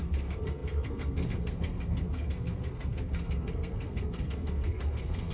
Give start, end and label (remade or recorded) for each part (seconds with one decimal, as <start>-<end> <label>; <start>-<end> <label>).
0.0-5.3 remade